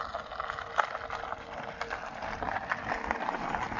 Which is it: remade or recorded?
recorded